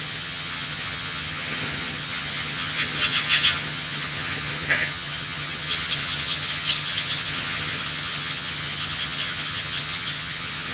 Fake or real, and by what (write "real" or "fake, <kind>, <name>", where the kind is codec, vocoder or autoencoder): fake, vocoder, HiFi-GAN